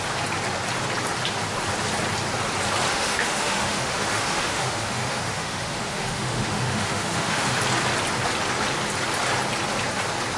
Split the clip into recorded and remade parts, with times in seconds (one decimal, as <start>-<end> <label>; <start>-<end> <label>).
0.0-2.9 recorded; 2.9-7.6 remade; 7.6-10.4 recorded